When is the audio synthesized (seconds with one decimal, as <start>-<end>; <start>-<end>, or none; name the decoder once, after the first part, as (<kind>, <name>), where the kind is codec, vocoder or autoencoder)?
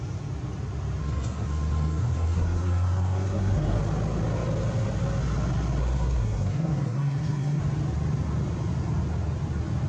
1.0-3.8 (codec, SNAC); 5.8-7.6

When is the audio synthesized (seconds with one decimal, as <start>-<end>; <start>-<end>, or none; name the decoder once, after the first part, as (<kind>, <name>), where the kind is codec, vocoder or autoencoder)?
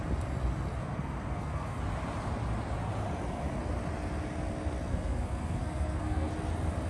0.8-1.8 (codec, SNAC); 4.9-6.3